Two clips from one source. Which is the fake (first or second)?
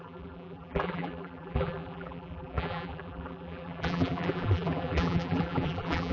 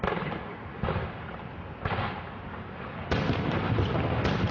first